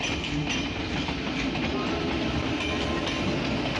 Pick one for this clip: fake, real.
real